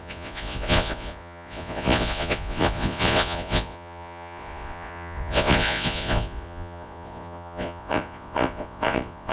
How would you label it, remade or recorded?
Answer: remade